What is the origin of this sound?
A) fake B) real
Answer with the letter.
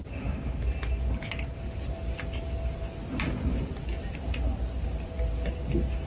B